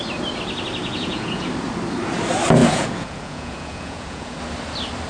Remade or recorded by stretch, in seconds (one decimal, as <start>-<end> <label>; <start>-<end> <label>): 0.0-0.8 recorded; 0.8-1.5 remade; 1.5-2.6 recorded; 2.6-4.4 remade; 4.4-5.1 recorded